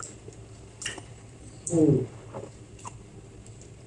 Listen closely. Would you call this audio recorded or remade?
recorded